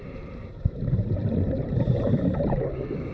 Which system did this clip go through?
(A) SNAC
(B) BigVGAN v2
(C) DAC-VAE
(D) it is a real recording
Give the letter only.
B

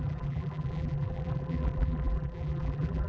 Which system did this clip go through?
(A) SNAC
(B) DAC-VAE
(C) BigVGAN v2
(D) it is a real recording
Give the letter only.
C